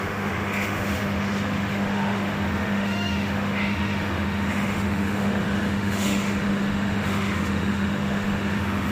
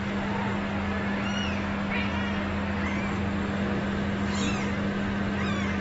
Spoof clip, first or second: first